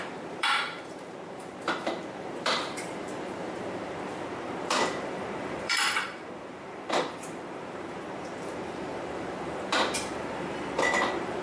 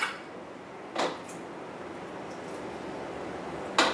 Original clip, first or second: second